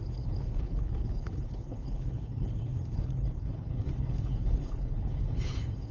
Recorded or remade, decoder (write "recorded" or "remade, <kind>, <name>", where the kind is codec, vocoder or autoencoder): remade, codec, HILCodec